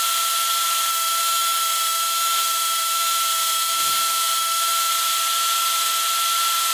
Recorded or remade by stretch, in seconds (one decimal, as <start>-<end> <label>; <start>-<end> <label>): 0.0-0.9 recorded; 0.9-4.9 remade; 4.9-6.7 recorded